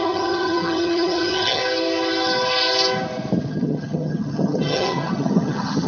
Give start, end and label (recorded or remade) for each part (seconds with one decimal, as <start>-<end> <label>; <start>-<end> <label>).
0.0-1.6 remade; 1.6-3.5 recorded; 3.5-5.9 remade